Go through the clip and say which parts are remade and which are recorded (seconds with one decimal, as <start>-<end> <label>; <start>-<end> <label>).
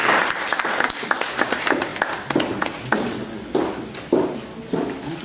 0.0-0.6 remade; 0.6-5.2 recorded